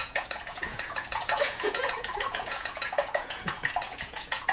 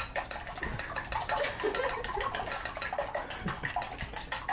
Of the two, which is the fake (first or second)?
first